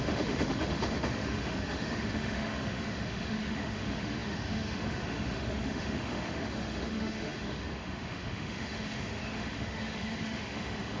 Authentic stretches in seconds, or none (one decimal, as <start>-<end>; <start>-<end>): none